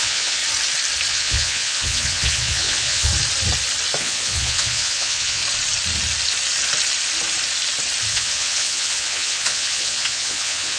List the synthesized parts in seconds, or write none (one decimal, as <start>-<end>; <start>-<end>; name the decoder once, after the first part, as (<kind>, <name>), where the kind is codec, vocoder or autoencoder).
0.0-0.4 (vocoder, Vocos); 1.1-3.1; 4.0-5.4; 8.1-10.8